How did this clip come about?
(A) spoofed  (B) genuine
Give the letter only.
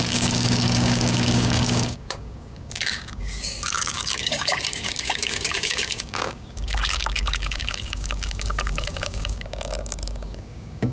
A